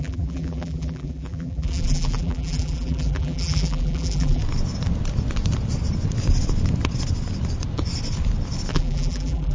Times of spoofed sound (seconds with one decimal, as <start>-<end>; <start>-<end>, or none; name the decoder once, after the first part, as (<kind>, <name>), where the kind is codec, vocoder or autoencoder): 0.0-4.4 (vocoder, BigVGAN v2); 8.7-9.5